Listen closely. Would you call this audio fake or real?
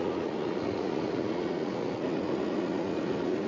fake